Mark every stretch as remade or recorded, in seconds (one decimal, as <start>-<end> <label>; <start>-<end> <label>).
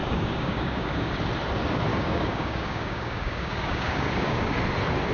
0.0-1.1 remade; 1.1-1.9 recorded; 1.9-4.6 remade; 4.6-5.1 recorded